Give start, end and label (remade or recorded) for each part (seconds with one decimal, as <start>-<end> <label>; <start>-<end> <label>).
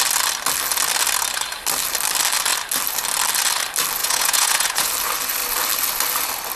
0.0-4.0 recorded; 4.0-4.9 remade; 4.9-6.6 recorded